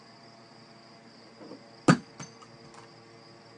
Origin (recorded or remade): recorded